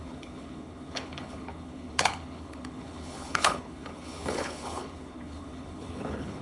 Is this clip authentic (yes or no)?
no